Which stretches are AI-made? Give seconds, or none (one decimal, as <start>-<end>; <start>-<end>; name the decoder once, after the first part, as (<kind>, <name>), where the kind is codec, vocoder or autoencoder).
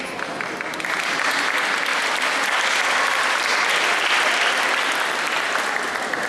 none